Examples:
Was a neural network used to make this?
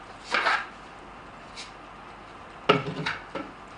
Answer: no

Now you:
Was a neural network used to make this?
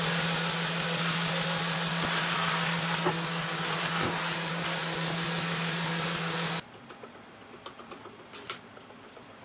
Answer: no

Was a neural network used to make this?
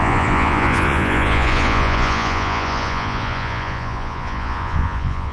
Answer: yes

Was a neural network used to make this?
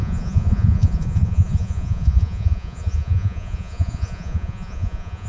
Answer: yes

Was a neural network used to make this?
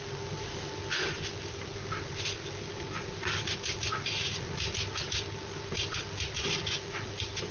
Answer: no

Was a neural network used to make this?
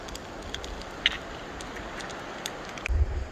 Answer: no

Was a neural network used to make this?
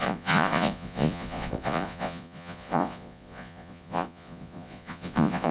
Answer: yes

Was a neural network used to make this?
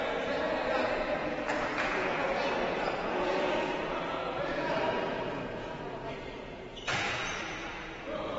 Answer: yes